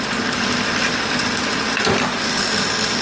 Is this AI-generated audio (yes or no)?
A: yes